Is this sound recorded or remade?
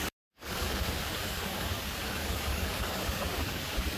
remade